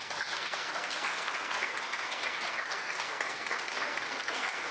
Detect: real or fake fake